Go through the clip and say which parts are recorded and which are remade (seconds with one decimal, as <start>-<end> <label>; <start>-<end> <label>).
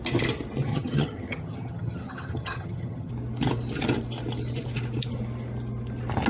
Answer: 0.0-0.7 recorded; 0.7-3.1 remade; 3.1-6.3 recorded